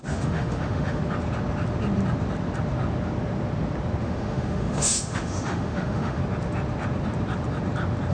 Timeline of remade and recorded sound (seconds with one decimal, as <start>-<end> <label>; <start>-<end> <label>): 0.0-1.0 remade; 1.0-4.0 recorded; 4.0-6.2 remade; 6.2-8.1 recorded